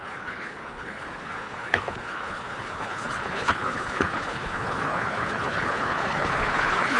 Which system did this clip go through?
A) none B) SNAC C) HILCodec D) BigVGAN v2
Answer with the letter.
C